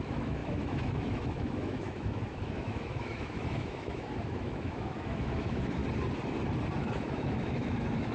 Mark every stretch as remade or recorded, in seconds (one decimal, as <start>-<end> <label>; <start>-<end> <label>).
0.0-5.8 remade; 5.8-6.8 recorded; 6.8-8.1 remade